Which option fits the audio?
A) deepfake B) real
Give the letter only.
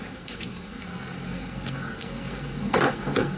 A